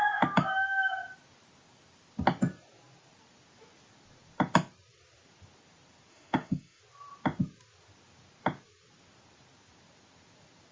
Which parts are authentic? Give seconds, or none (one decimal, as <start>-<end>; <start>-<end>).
0.0-6.1; 6.8-10.7